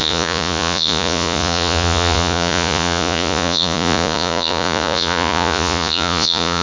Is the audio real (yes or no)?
no